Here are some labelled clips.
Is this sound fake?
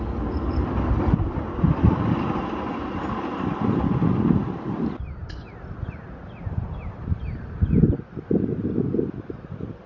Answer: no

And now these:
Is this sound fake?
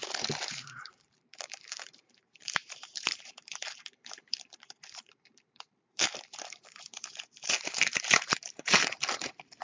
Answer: yes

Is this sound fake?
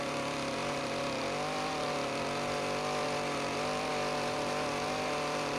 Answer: yes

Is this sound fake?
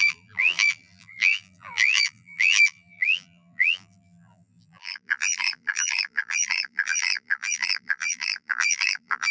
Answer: yes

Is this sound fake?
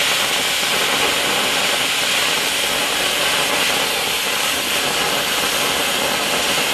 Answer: no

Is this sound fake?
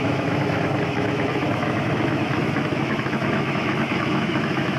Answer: yes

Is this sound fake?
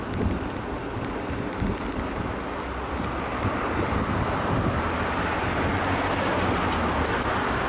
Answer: no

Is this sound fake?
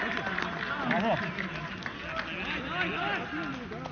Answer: no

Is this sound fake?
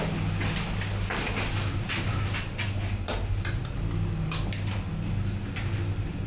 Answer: no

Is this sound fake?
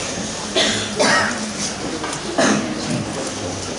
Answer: no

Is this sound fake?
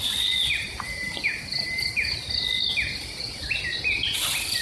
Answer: no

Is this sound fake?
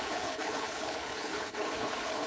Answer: yes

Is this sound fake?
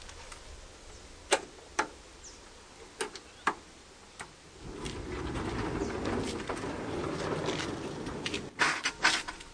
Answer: no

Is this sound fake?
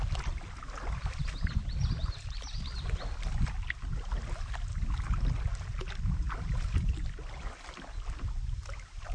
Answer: no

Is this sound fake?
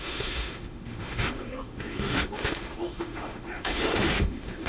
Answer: yes